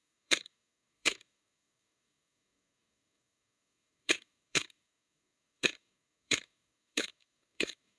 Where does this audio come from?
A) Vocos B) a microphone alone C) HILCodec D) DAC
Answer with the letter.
D